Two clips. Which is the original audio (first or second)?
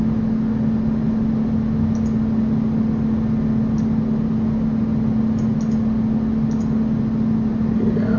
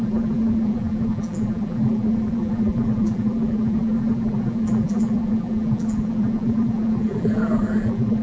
first